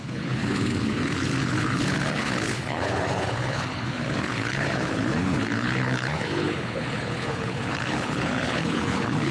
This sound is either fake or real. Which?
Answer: fake